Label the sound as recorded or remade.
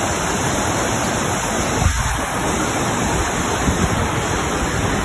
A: recorded